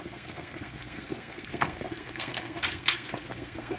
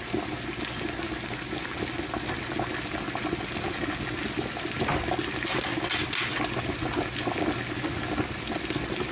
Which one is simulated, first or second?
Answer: first